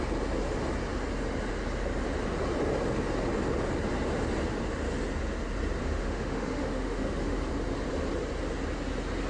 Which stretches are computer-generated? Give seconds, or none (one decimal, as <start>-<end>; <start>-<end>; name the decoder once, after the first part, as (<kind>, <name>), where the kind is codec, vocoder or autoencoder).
5.8-7.5 (autoencoder, DAC-VAE)